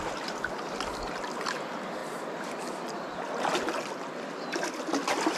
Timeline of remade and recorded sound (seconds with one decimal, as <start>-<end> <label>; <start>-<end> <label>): 0.0-5.4 recorded

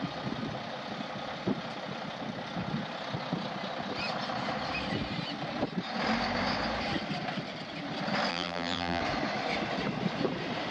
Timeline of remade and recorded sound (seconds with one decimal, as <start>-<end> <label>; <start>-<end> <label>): 0.0-8.3 recorded; 8.3-9.0 remade; 9.0-10.7 recorded

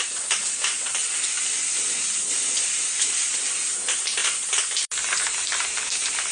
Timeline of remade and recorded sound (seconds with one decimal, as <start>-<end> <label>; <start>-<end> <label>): 0.0-1.0 remade; 1.0-2.7 recorded; 2.7-6.3 remade

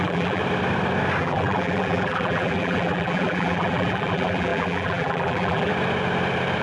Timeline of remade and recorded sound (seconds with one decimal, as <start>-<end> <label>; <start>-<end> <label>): 0.0-0.4 remade; 0.4-1.2 recorded; 1.2-5.7 remade; 5.7-6.6 recorded

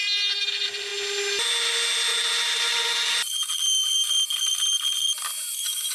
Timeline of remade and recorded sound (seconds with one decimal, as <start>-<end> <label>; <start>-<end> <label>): 0.0-5.9 recorded